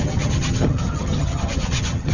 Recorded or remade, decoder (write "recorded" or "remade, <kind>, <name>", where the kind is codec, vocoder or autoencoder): remade, vocoder, HiFi-GAN